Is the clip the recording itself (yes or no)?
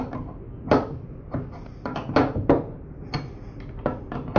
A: yes